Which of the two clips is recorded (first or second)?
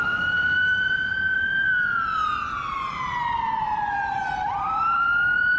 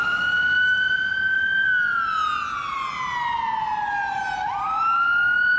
second